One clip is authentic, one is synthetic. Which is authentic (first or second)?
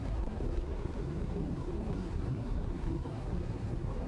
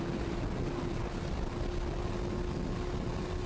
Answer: second